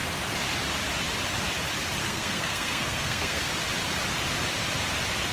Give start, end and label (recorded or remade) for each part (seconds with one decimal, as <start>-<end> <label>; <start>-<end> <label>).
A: 0.0-2.0 recorded; 2.0-3.5 remade; 3.5-5.3 recorded